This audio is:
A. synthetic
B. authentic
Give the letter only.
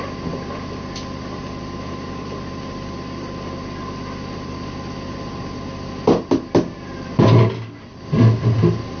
B